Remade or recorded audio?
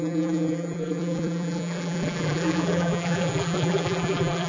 remade